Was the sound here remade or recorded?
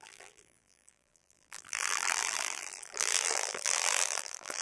remade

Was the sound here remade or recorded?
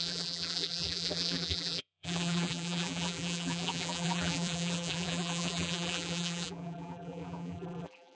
remade